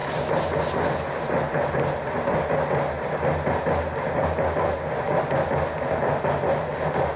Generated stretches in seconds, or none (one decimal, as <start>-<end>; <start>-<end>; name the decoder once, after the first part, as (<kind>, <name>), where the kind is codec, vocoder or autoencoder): none